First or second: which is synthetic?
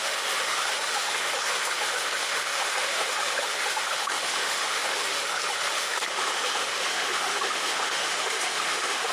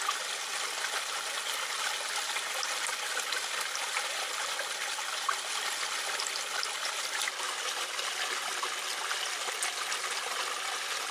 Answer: first